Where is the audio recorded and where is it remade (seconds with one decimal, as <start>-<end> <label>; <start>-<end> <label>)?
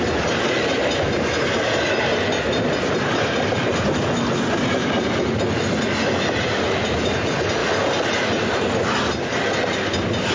0.0-10.3 recorded